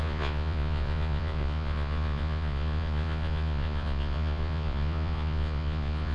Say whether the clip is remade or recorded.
remade